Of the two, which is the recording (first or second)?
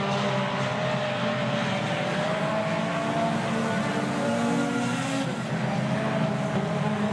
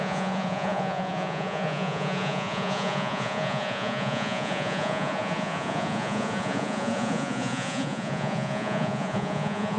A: first